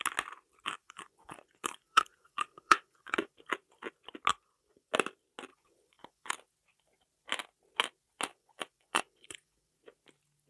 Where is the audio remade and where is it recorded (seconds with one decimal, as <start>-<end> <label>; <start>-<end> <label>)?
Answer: 0.0-0.8 recorded; 0.8-3.3 remade; 3.3-4.3 recorded; 4.3-4.9 remade; 4.9-5.5 recorded; 5.5-6.3 remade; 6.3-8.3 recorded; 8.3-9.7 remade; 9.7-10.5 recorded